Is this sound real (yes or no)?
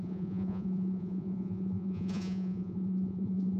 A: no